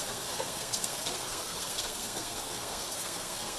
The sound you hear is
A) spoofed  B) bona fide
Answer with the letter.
A